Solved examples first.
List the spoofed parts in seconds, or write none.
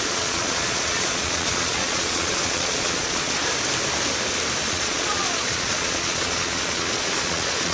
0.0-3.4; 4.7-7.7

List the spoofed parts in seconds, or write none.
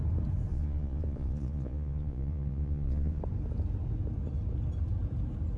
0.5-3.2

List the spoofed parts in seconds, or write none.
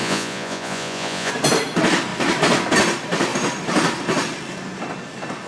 0.0-1.3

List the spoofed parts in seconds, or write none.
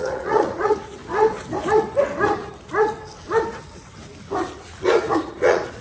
0.0-1.0; 4.5-5.8